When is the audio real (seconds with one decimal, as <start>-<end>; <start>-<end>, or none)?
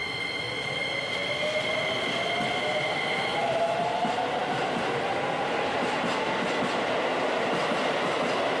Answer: 0.0-3.3; 3.9-8.6